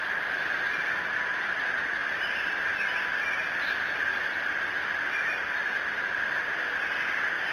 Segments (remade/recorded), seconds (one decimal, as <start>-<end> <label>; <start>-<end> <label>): 0.0-7.5 recorded